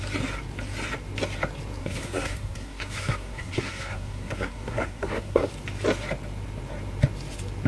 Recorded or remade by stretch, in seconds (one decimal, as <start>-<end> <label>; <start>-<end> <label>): 0.0-1.8 recorded; 1.8-5.5 remade; 5.5-7.7 recorded